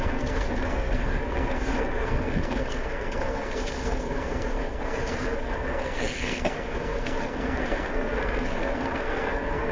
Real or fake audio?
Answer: fake